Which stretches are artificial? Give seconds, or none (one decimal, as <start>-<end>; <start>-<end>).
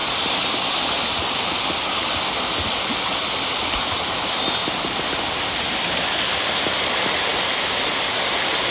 none